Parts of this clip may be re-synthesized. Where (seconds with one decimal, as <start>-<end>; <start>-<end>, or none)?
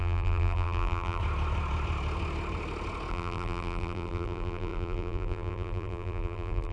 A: 0.0-1.2; 3.1-6.7